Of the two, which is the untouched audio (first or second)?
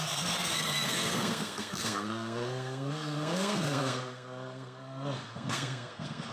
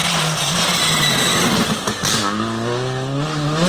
second